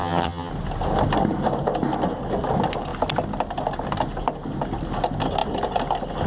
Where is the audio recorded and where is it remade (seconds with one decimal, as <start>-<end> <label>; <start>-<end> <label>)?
0.0-0.5 remade; 0.5-6.3 recorded